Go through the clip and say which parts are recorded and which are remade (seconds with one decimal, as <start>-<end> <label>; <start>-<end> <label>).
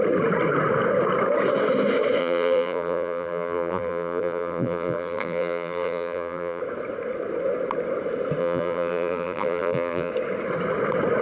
0.0-2.2 recorded; 2.2-6.6 remade; 6.6-8.4 recorded; 8.4-10.1 remade; 10.1-11.2 recorded